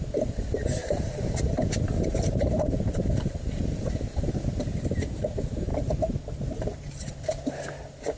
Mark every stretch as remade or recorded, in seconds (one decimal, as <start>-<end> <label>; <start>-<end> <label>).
0.0-2.1 recorded; 2.1-3.0 remade; 3.0-5.7 recorded; 5.7-7.1 remade; 7.1-8.2 recorded